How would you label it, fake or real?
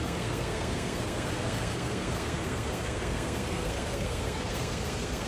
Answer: fake